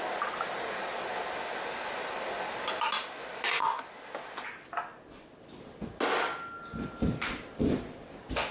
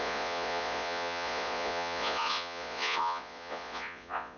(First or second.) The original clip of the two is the first